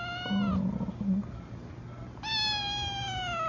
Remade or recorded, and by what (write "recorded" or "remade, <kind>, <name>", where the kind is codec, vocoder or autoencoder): recorded